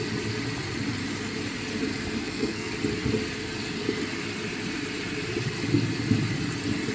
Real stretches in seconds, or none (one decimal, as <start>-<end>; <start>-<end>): 0.0-2.2; 2.7-6.9